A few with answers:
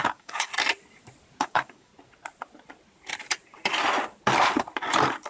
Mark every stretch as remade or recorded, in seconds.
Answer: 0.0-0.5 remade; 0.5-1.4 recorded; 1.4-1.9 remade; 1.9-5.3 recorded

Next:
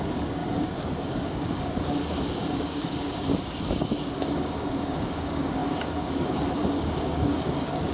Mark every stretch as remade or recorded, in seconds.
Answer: 0.0-7.9 remade